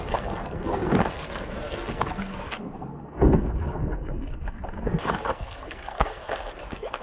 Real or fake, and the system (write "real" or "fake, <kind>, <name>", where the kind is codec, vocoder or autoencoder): fake, codec, SNAC